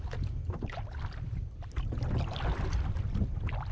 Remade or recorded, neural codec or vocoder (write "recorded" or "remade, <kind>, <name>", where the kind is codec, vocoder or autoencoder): recorded